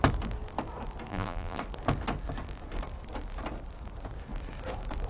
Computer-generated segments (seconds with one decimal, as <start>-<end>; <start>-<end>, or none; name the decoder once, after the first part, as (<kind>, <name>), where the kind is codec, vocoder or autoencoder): 1.1-1.6 (vocoder, BigVGAN v2)